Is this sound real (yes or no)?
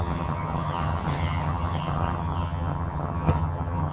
no